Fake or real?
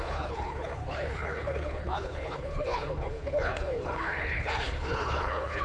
fake